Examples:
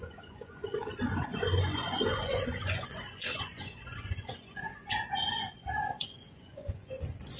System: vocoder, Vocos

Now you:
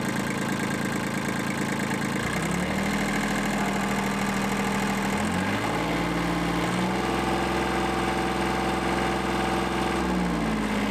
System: none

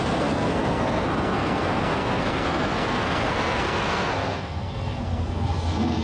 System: codec, SNAC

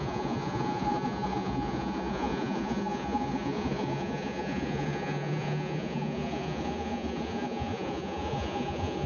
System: vocoder, Vocos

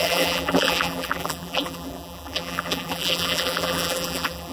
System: vocoder, BigVGAN v2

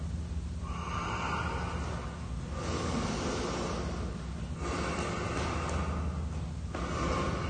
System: none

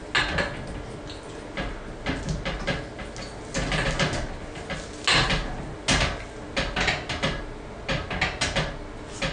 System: none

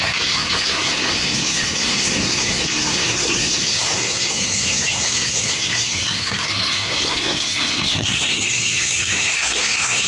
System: codec, SNAC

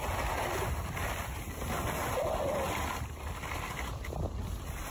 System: none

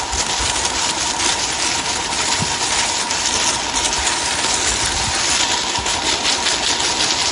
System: none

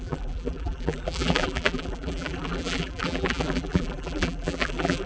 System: vocoder, BigVGAN v2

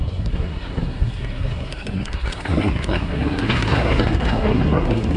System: codec, SNAC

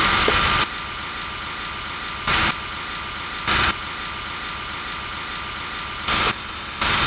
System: none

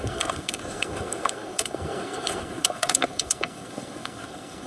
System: codec, SNAC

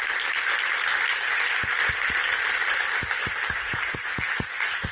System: none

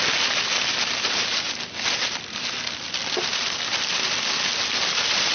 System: none